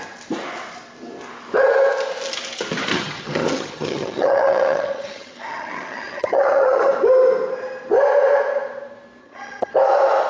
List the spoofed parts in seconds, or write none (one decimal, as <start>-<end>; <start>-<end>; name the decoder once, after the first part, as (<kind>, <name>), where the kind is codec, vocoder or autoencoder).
2.9-6.9 (vocoder, HiFi-GAN); 9.2-9.7